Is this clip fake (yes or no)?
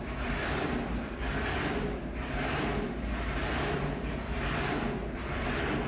no